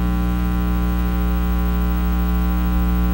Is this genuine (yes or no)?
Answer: yes